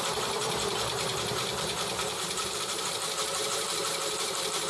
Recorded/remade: remade